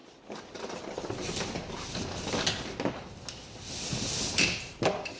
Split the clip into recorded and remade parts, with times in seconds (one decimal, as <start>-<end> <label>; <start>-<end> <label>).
0.0-5.2 recorded